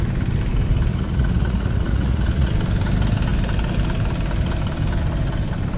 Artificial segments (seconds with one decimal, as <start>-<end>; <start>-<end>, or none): 0.9-2.5